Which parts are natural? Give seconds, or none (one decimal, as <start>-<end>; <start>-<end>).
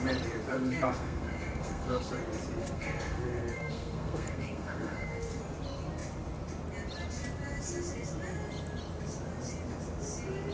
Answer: 0.0-0.5; 2.1-2.6; 5.4-10.5